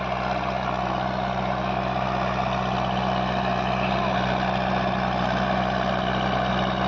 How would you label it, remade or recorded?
recorded